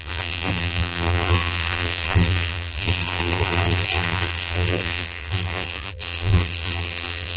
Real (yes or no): no